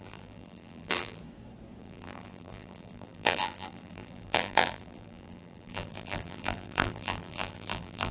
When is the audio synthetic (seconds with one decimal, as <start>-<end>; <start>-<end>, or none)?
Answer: 0.0-1.2; 1.8-8.1

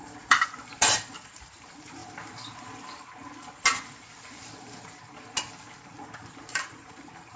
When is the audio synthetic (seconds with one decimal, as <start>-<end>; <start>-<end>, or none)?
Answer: 0.0-2.0; 6.4-7.4

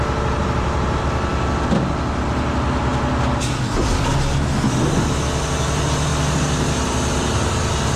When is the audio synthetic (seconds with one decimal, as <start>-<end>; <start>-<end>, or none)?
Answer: none

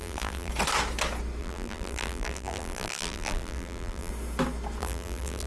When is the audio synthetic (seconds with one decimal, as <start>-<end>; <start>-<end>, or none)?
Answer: 0.0-0.5; 1.4-4.1; 4.8-5.5

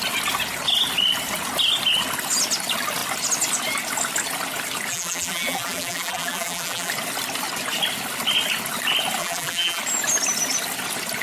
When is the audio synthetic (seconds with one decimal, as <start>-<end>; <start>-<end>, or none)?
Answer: 4.9-6.9; 9.2-9.8

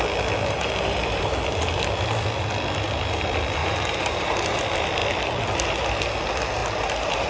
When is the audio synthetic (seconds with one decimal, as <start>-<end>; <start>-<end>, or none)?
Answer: 0.4-1.2; 3.6-4.6